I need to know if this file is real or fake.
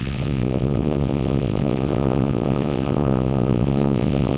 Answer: fake